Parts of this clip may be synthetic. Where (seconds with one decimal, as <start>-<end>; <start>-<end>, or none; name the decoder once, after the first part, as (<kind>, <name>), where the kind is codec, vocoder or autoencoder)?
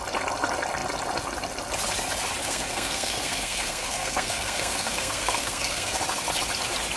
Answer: 2.4-6.0 (codec, SNAC)